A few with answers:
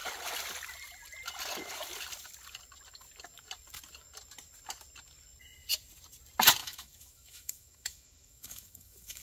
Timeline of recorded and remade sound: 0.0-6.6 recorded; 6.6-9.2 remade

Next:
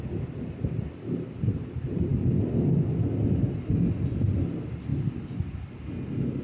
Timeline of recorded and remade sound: 0.0-6.4 recorded

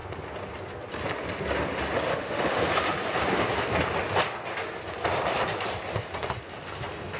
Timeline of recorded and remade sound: 0.0-2.1 recorded; 2.1-2.7 remade; 2.7-7.2 recorded

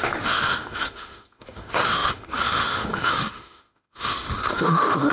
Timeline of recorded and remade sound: 0.0-5.1 remade

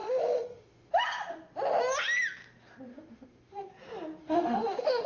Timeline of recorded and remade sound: 0.0-0.9 remade; 0.9-2.9 recorded; 2.9-3.7 remade; 3.7-4.2 recorded; 4.2-5.1 remade